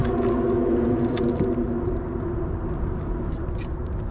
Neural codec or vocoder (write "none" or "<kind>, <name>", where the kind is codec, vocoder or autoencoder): none